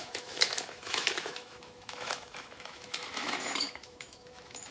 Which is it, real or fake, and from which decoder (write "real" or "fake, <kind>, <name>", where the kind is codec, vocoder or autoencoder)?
fake, autoencoder, DAC-VAE